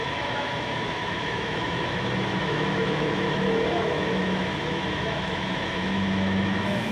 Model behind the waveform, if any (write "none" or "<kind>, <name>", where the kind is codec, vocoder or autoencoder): autoencoder, DAC-VAE